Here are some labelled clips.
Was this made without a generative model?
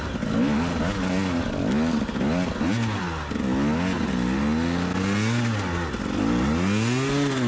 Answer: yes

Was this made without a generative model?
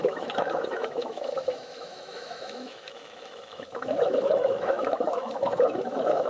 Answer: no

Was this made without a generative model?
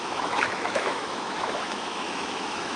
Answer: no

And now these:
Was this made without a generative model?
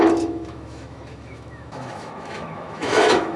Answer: no